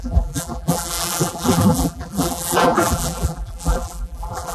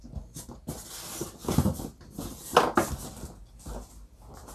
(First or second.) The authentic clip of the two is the second